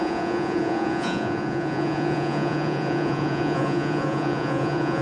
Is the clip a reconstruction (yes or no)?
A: yes